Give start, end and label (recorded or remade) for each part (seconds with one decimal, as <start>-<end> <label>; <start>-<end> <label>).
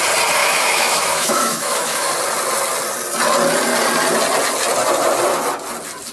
0.0-0.4 recorded; 0.4-2.1 remade; 2.1-6.1 recorded